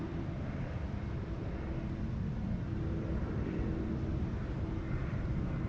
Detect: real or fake real